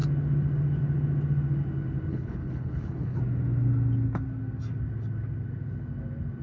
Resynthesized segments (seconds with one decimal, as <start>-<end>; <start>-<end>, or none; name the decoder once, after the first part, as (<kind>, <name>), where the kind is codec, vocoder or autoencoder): 2.1-3.2 (codec, HILCodec)